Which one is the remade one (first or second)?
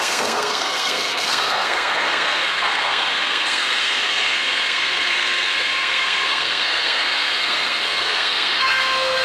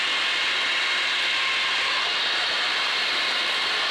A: first